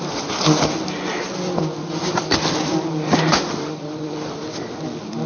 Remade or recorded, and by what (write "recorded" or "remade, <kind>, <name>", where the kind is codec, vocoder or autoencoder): recorded